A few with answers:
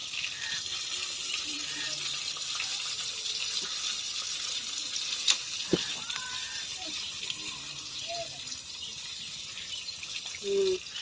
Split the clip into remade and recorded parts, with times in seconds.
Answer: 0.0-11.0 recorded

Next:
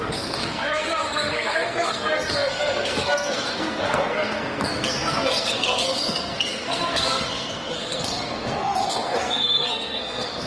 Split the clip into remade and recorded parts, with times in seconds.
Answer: 0.0-10.5 remade